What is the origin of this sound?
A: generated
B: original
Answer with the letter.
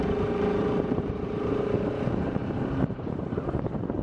A